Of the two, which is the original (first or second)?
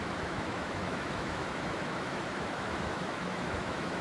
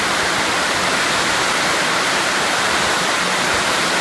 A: second